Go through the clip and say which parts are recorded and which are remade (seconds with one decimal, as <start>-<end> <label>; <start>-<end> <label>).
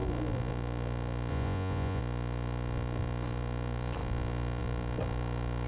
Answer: 0.0-1.3 recorded; 1.3-2.0 remade; 2.0-5.7 recorded